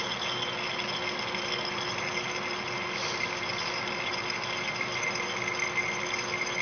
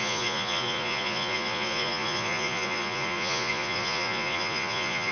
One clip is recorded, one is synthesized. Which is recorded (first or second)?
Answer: first